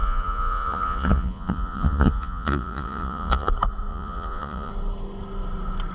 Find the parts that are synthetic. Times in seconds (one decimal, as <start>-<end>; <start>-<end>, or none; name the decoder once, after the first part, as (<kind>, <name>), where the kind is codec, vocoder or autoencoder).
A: 0.0-3.5 (vocoder, Vocos); 3.9-4.7

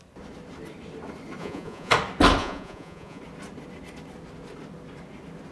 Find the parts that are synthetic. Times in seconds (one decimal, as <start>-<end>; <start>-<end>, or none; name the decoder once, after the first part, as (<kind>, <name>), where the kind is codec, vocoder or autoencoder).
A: 1.4-1.9 (vocoder, Vocos); 2.4-3.2

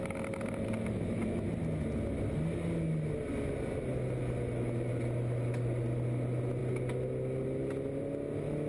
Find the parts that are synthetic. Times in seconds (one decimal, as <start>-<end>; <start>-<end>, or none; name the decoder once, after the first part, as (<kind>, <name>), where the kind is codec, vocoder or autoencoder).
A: none